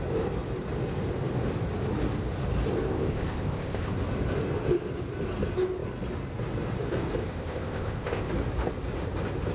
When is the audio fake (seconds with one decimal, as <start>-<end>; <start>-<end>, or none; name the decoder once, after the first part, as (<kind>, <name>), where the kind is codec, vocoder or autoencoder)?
2.9-3.9 (codec, ZipCodec); 7.2-8.3